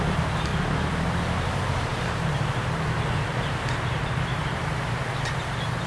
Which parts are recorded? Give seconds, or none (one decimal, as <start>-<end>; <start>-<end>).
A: 0.5-1.2